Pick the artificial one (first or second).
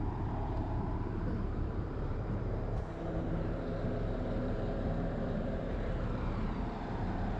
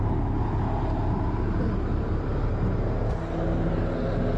first